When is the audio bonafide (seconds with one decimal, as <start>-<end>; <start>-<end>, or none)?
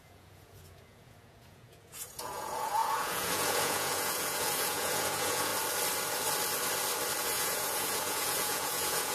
5.5-7.2